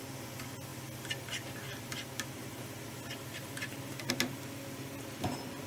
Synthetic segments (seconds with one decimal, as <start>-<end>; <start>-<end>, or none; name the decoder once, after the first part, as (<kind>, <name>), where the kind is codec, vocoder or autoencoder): none